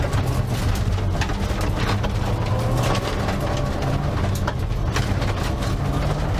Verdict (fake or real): real